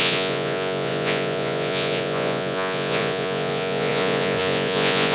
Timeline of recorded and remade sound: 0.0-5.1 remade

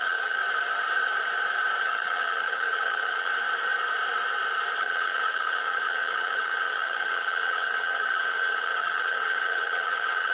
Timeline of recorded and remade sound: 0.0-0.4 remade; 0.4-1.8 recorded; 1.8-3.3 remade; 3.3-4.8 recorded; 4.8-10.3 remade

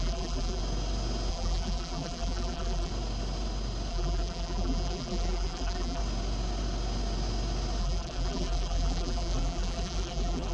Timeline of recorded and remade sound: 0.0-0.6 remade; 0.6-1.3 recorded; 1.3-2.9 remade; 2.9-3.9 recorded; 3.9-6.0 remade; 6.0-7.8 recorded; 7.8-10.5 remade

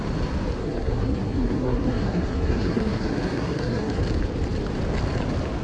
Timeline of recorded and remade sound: 0.0-0.6 recorded; 0.6-4.0 remade; 4.0-5.6 recorded

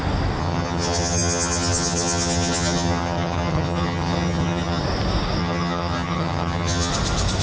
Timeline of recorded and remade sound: 0.0-0.4 recorded; 0.4-4.8 remade; 4.8-5.4 recorded; 5.4-6.9 remade; 6.9-7.4 recorded